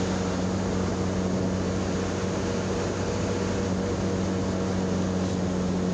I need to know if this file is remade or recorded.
recorded